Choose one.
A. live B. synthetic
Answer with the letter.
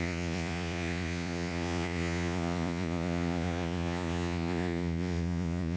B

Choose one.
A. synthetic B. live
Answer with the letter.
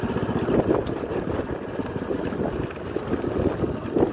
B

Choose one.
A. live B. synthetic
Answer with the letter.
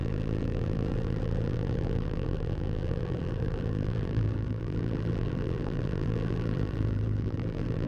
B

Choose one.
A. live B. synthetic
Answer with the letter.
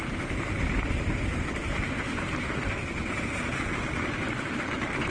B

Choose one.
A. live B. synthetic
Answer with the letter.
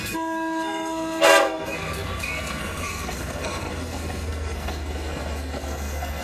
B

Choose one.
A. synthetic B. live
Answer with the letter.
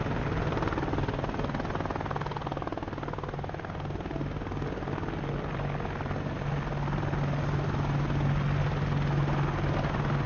B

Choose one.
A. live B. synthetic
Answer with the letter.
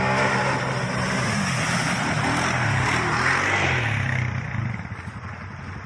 A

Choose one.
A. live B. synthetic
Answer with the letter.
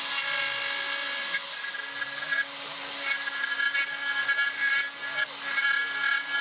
A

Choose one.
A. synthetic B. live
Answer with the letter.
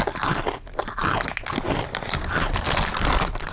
B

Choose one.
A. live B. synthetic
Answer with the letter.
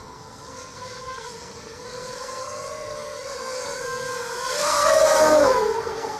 B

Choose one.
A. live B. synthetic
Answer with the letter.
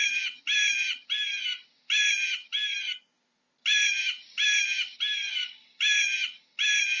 A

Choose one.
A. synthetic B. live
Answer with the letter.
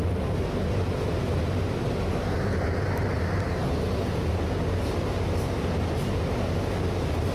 B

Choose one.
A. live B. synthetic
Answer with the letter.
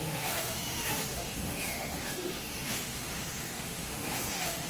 B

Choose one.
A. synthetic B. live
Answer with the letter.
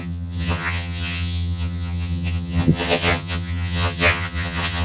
A